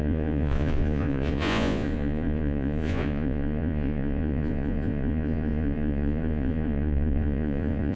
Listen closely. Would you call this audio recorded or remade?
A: remade